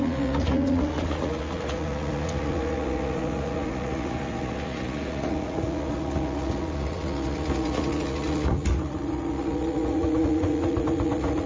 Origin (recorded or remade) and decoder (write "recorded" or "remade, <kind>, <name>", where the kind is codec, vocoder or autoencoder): remade, vocoder, Vocos